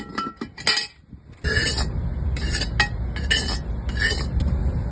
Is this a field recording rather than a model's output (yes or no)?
yes